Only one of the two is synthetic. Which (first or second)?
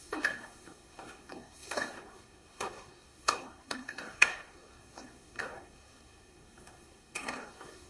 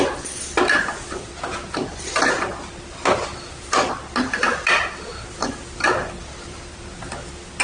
first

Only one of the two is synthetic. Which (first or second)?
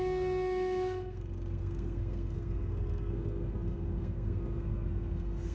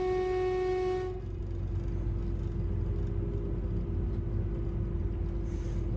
first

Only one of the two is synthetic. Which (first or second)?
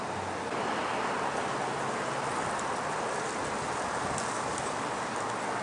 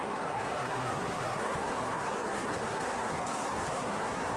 second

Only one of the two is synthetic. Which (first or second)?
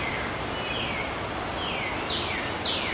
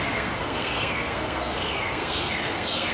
second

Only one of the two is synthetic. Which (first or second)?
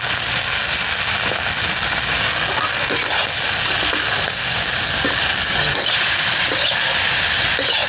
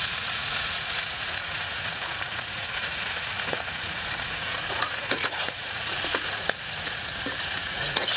second